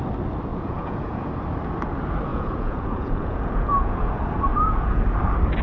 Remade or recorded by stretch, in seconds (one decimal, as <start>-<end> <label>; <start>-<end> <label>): 0.0-0.5 recorded; 0.5-1.3 remade; 1.3-2.3 recorded; 2.3-4.1 remade; 4.1-4.5 recorded; 4.5-5.0 remade; 5.0-5.6 recorded